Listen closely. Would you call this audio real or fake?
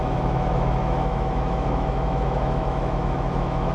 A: fake